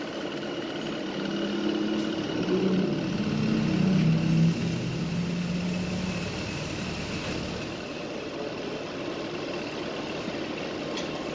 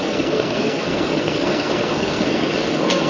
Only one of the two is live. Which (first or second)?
first